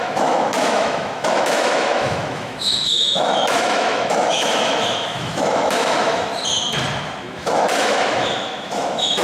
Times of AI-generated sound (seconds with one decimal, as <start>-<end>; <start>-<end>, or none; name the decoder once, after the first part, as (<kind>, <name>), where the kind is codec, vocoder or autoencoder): 0.0-6.3 (autoencoder, DAC-VAE); 7.2-9.2